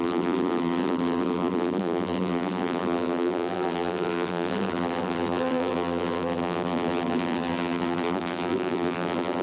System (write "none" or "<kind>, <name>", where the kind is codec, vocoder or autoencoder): vocoder, BigVGAN v2